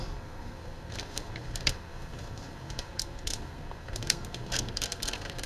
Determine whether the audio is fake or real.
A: fake